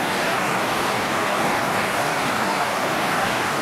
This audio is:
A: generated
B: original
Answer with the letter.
A